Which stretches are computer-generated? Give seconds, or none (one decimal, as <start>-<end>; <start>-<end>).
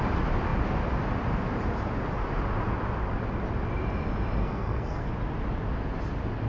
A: 4.4-5.1